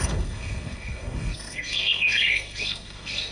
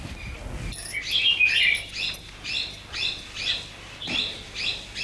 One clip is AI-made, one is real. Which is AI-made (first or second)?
first